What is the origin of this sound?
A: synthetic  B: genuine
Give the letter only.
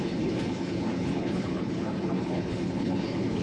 A